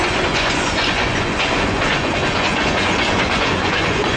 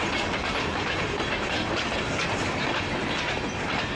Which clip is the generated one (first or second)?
first